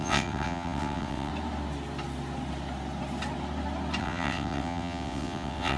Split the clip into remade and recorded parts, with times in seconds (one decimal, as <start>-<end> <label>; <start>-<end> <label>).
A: 0.0-1.3 remade; 1.3-4.0 recorded; 4.0-5.8 remade